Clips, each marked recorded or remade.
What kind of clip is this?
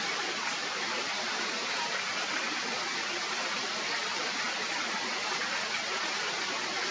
remade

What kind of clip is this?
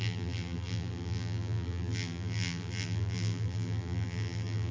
remade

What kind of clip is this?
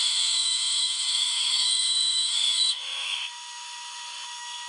remade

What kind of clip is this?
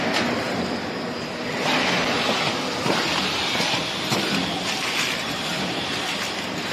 recorded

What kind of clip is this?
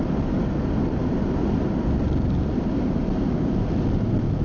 recorded